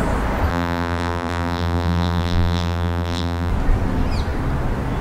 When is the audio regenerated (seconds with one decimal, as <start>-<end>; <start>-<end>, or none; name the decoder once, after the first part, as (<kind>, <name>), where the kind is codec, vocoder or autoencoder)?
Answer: 0.5-3.5 (vocoder, BigVGAN v2)